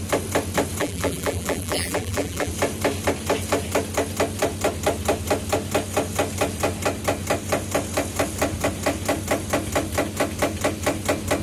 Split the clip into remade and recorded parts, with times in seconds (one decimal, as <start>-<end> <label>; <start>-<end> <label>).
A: 0.0-0.8 recorded; 0.8-2.5 remade; 2.5-11.4 recorded